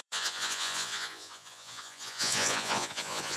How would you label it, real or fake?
fake